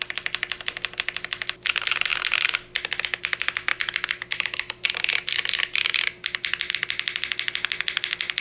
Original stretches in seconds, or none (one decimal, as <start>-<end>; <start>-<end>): 0.0-8.4